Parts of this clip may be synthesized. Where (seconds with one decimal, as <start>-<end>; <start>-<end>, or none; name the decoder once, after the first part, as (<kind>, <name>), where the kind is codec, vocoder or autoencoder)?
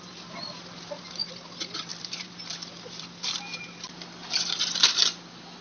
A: none